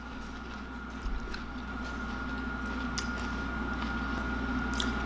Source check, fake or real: real